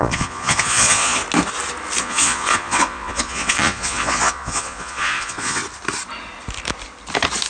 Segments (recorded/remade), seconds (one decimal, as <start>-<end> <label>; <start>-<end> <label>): 0.0-1.2 remade; 1.2-2.0 recorded; 2.0-5.6 remade; 5.6-7.5 recorded